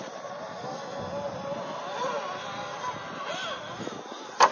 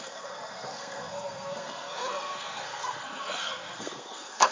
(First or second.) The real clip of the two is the first